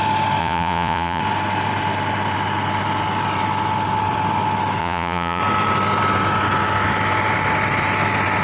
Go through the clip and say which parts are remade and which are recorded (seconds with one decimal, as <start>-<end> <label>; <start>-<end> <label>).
0.0-0.4 recorded; 0.4-1.2 remade; 1.2-4.8 recorded; 4.8-5.4 remade; 5.4-8.4 recorded